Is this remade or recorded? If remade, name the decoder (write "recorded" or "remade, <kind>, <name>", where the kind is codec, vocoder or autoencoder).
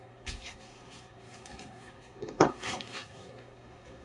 remade, codec, SNAC